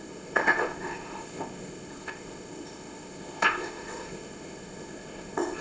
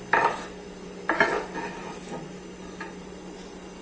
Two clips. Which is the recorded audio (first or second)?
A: second